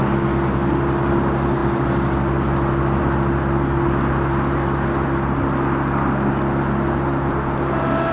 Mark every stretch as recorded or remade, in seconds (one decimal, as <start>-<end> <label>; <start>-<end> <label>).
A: 0.0-8.1 recorded